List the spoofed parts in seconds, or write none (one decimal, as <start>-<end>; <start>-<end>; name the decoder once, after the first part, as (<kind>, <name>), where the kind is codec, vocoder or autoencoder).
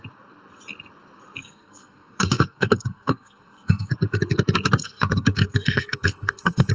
1.4-3.9 (codec, SNAC); 4.8-6.7